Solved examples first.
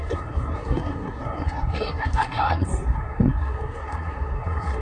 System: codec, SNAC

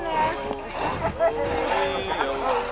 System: none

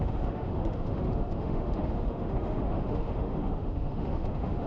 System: autoencoder, DAC-VAE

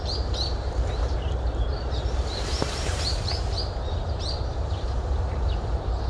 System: vocoder, BigVGAN v2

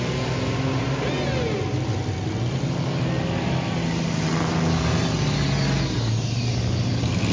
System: none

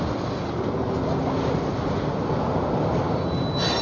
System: none